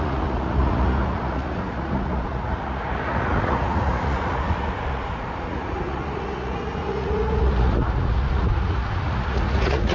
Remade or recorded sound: remade